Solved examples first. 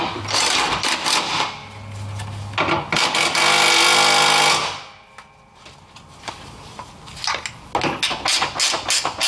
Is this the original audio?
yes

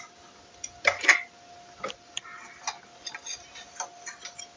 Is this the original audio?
yes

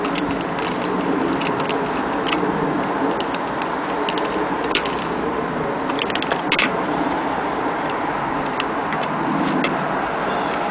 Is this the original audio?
yes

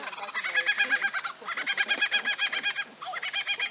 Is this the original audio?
yes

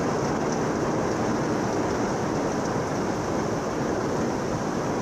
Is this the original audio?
yes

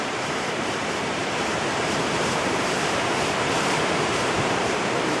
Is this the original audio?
no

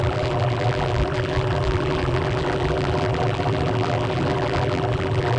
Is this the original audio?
no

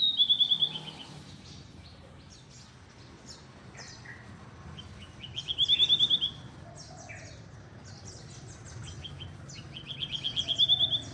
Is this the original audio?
yes